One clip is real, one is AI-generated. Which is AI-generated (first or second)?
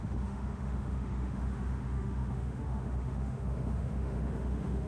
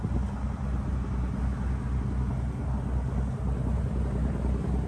first